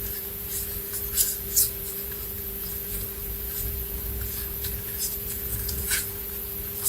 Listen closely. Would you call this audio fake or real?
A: fake